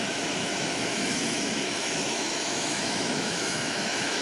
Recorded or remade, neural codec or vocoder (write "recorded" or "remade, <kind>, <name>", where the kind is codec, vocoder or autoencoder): remade, autoencoder, DAC-VAE